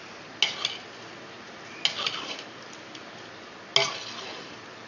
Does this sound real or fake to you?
real